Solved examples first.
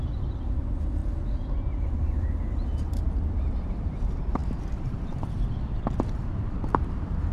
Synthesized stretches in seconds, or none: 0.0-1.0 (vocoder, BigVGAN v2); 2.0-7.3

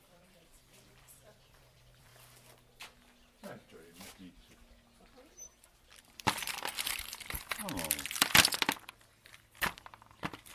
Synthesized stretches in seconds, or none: 0.0-2.1 (vocoder, BigVGAN v2); 5.9-7.6; 9.3-10.5

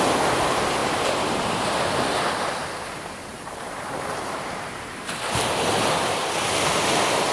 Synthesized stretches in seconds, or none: 3.3-4.5 (vocoder, BigVGAN v2)

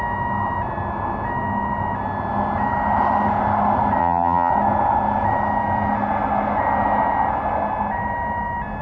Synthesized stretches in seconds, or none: 4.0-4.5 (vocoder, BigVGAN v2)

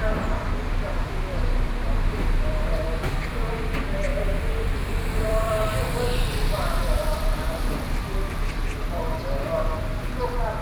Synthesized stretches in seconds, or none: 0.0-3.3 (vocoder, BigVGAN v2); 4.1-8.0

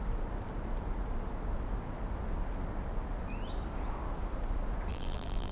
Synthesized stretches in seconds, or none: 4.9-5.5 (vocoder, BigVGAN v2)

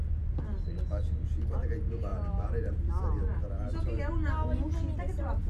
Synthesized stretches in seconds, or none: 2.1-3.7 (vocoder, BigVGAN v2)